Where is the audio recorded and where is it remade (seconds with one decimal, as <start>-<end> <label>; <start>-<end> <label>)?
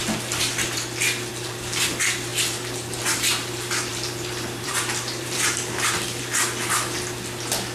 0.0-3.9 recorded; 3.9-6.2 remade; 6.2-7.7 recorded